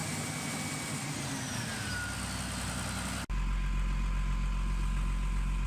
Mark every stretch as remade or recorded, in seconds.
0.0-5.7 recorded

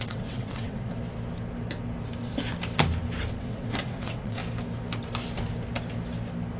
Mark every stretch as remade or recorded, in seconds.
0.0-0.9 remade; 0.9-3.3 recorded; 3.3-4.4 remade; 4.4-6.6 recorded

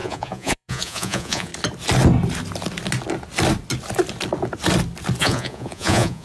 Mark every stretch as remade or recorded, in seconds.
0.0-1.5 remade; 1.5-5.2 recorded; 5.2-6.2 remade

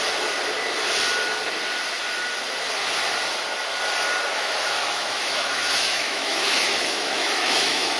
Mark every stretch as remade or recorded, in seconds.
0.0-4.3 recorded; 4.3-8.0 remade

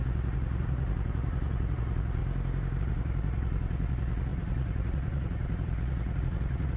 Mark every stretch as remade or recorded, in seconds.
0.0-2.2 remade; 2.2-2.8 recorded; 2.8-6.8 remade

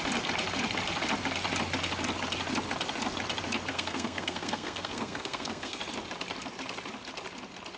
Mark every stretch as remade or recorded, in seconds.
0.0-3.7 recorded; 3.7-5.8 remade; 5.8-7.8 recorded